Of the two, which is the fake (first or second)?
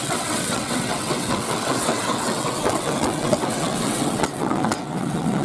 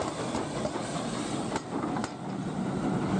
first